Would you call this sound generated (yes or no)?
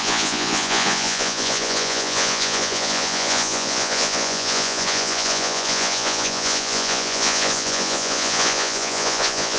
yes